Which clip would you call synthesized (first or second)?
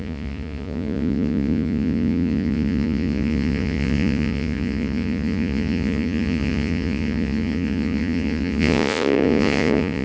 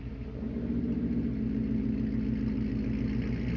first